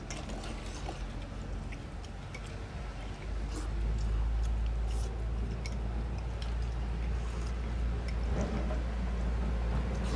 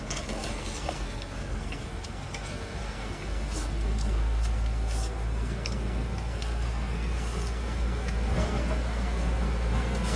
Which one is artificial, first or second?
second